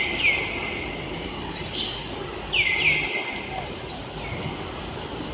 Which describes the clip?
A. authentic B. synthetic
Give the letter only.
A